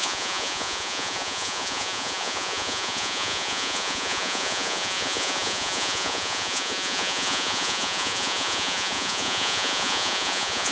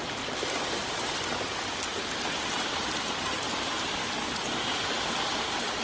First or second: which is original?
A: second